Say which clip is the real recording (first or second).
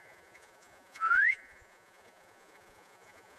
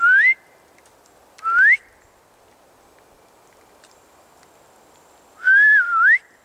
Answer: second